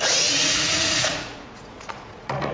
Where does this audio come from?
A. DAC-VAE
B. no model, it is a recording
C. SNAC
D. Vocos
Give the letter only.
D